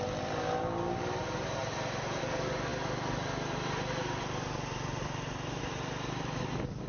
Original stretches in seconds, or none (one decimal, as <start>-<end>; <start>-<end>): 0.0-1.6; 2.2-6.9